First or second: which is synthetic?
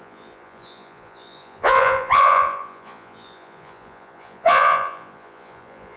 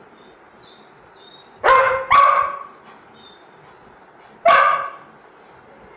first